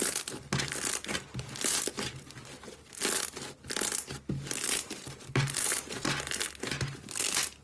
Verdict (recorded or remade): recorded